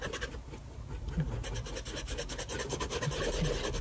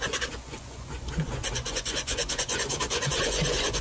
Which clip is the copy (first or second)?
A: second